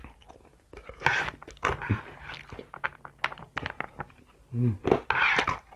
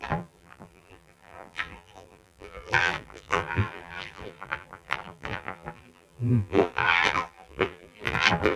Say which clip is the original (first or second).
first